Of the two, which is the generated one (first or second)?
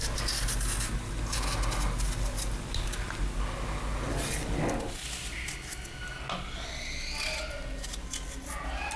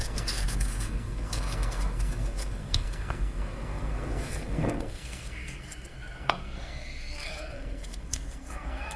second